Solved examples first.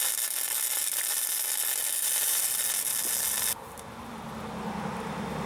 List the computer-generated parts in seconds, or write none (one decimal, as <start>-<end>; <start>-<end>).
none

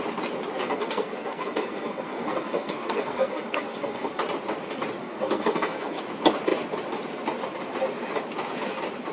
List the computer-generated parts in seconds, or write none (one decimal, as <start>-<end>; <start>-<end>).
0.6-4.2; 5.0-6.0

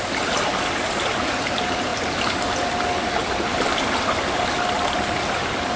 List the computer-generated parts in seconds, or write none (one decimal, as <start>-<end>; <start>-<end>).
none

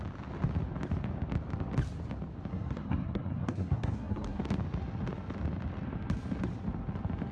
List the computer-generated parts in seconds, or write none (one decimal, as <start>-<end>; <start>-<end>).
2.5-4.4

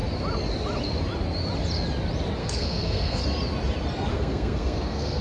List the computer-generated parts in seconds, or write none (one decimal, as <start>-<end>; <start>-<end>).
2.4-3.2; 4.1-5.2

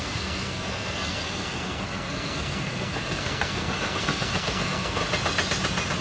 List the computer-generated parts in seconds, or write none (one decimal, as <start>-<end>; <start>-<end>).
0.0-5.0